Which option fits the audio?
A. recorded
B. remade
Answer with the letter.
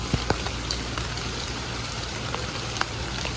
B